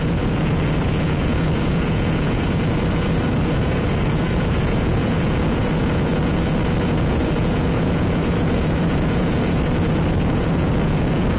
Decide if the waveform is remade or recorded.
remade